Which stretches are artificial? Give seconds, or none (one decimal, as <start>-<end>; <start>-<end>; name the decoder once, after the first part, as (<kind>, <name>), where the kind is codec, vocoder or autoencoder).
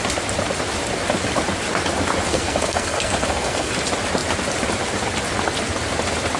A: 2.3-3.7 (codec, SNAC)